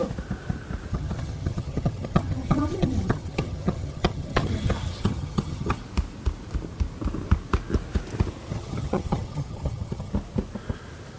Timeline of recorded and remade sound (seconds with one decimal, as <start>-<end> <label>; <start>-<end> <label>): 0.0-0.9 recorded; 0.9-5.8 remade; 5.8-8.5 recorded; 8.5-10.1 remade; 10.1-11.2 recorded